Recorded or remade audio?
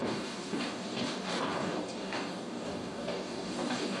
remade